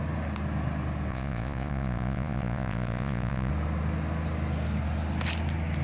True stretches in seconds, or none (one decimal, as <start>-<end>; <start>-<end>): 0.0-1.1; 3.5-5.8